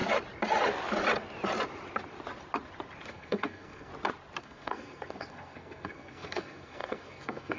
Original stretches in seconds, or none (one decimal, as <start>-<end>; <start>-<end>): 0.0-3.1; 3.9-4.4